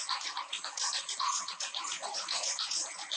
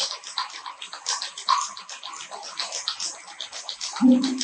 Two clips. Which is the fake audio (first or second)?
first